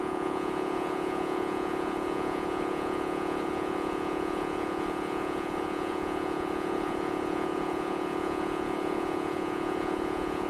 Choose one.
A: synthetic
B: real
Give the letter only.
A